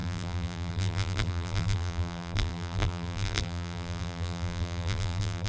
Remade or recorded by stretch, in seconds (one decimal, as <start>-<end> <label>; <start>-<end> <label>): 0.0-5.5 remade